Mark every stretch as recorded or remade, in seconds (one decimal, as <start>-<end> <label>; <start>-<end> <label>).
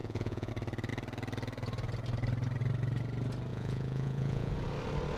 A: 0.0-0.5 remade; 0.5-3.5 recorded; 3.5-4.5 remade; 4.5-5.2 recorded